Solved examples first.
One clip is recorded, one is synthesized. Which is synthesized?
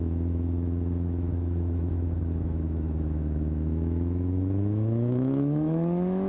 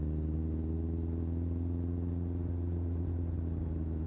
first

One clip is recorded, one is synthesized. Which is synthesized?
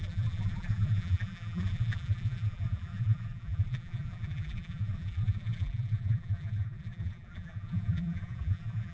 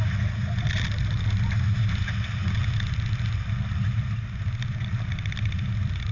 first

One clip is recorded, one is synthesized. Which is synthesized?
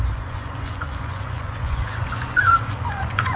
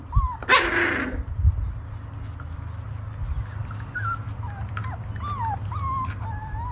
first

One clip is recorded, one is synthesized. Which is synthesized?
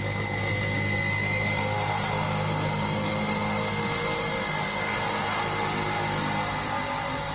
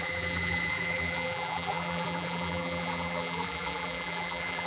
second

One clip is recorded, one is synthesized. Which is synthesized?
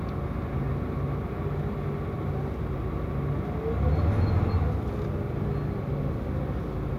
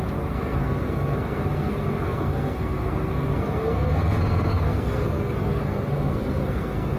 second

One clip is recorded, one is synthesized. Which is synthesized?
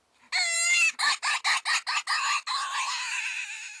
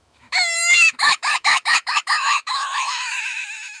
second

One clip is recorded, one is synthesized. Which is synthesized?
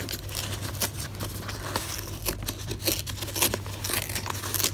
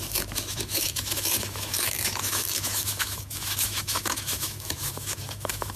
second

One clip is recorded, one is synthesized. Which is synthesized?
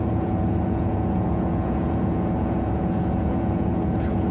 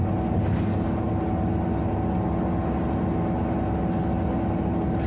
first